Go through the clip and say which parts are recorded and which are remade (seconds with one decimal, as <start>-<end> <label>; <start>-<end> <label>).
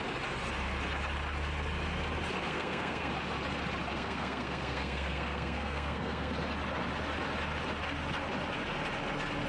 0.0-2.4 recorded; 2.4-3.1 remade; 3.1-3.9 recorded; 3.9-6.3 remade; 6.3-9.5 recorded